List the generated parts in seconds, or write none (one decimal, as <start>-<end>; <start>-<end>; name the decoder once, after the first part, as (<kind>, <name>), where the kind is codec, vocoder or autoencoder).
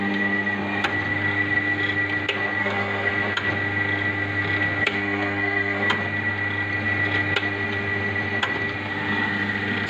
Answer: 2.6-3.1 (codec, SNAC); 4.8-5.9